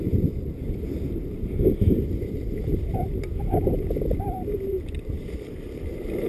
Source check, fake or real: fake